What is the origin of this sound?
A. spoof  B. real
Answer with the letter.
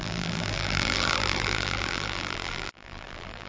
A